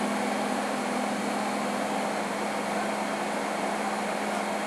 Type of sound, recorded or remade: recorded